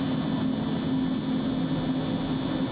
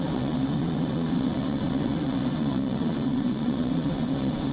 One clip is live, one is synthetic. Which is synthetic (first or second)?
second